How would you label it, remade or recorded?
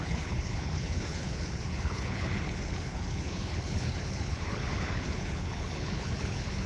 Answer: remade